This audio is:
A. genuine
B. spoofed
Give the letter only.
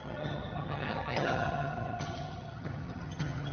B